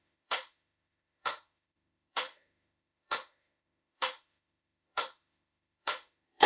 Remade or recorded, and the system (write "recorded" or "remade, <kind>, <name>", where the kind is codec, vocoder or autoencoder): remade, autoencoder, DAC-VAE